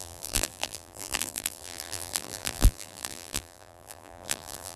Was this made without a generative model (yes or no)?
no